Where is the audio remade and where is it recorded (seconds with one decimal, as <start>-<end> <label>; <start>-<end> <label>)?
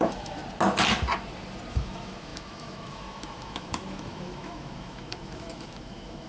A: 0.0-0.4 remade; 0.4-1.7 recorded; 1.7-6.3 remade